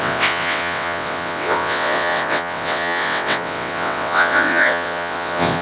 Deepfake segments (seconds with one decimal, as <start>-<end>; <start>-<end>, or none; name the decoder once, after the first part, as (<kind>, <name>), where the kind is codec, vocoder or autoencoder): 0.0-5.6 (vocoder, WaveNeXt)